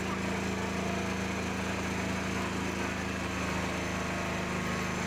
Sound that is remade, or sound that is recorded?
recorded